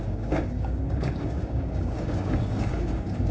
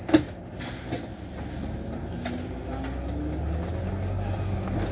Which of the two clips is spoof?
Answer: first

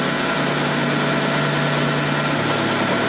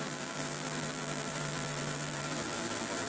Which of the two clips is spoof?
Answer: second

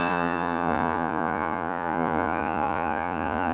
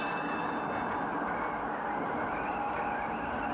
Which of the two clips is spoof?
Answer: first